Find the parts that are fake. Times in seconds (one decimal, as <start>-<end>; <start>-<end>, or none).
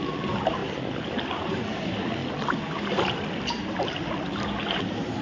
none